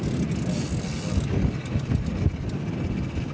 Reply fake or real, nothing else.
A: real